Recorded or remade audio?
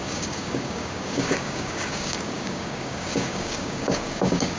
remade